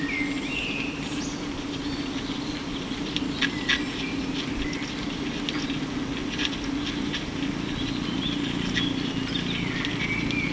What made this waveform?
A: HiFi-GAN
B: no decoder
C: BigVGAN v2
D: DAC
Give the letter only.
B